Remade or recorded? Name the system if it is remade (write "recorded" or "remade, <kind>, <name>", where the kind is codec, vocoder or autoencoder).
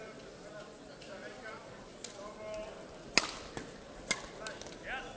recorded